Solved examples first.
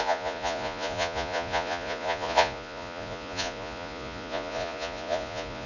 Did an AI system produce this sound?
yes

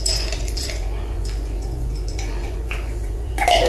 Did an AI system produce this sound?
yes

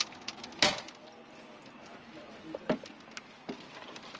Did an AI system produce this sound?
no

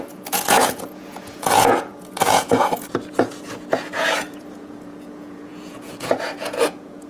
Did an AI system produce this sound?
yes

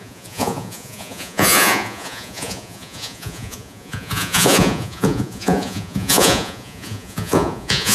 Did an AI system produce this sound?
yes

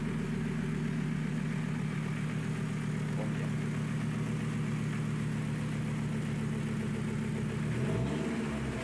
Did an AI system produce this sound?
no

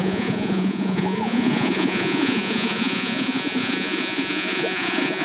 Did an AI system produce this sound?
yes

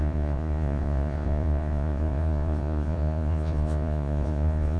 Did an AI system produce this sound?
yes